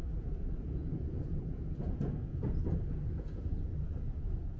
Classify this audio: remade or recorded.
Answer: remade